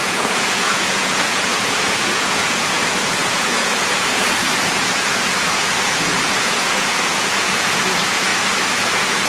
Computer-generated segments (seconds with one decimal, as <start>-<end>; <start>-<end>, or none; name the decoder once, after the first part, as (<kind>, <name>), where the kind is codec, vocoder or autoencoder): 0.0-8.3 (vocoder, Vocos); 8.9-9.3

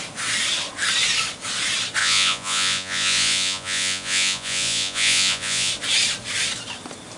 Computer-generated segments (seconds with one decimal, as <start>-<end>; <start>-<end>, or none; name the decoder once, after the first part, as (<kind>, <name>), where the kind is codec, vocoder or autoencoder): 2.0-5.7 (vocoder, Vocos)

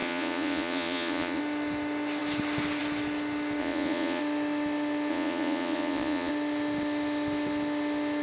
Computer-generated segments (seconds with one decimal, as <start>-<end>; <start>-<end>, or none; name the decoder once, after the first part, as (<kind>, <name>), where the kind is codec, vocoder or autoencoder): 0.0-1.4 (vocoder, Vocos); 3.6-4.2; 5.1-6.3

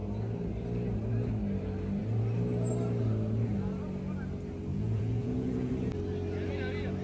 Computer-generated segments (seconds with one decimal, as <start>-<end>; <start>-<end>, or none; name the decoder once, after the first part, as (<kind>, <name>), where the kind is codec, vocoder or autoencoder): 4.7-5.7 (vocoder, Vocos)

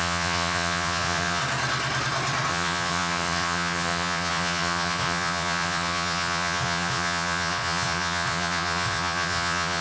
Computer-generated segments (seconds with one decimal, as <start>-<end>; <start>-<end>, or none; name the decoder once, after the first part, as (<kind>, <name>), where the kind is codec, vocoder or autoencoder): 0.0-1.4 (vocoder, Vocos); 2.5-9.8

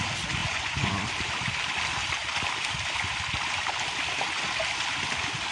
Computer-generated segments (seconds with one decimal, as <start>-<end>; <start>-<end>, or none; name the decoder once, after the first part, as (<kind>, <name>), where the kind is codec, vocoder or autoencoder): 0.4-0.9 (vocoder, Vocos)

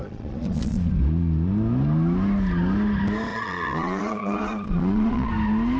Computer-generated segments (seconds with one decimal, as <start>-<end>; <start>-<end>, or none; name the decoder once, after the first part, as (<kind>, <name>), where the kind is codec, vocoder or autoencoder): 0.0-0.9 (vocoder, Vocos); 3.3-5.3